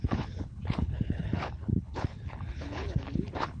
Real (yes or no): no